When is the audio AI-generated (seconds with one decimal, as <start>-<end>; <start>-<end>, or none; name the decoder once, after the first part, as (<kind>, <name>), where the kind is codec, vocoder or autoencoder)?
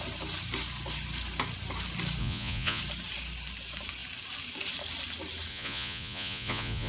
2.2-2.8 (vocoder, Vocos); 5.5-6.9